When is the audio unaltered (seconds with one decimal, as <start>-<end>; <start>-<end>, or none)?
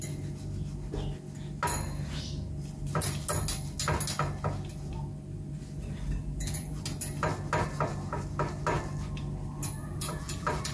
0.0-6.2; 6.8-9.8